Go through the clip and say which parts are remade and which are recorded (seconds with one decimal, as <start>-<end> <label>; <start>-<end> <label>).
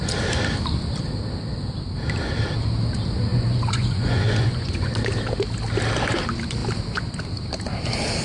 0.0-3.3 recorded; 3.3-4.9 remade; 4.9-8.2 recorded